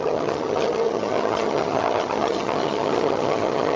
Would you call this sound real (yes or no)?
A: no